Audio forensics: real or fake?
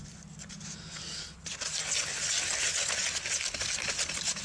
real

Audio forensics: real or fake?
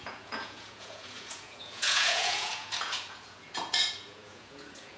fake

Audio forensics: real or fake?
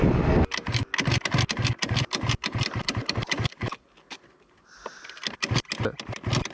real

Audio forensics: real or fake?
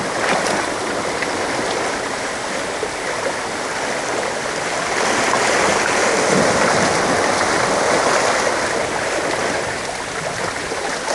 real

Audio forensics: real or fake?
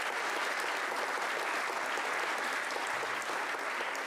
real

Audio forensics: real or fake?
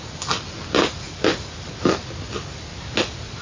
real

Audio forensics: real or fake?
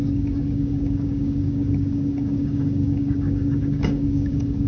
fake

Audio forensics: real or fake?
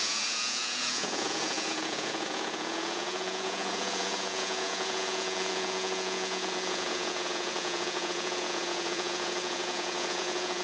fake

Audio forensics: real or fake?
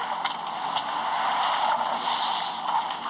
real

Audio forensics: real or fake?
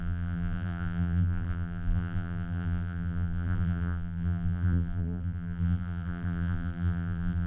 fake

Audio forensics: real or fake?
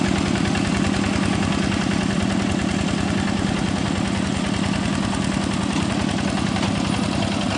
real